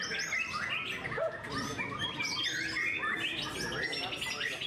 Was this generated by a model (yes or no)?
no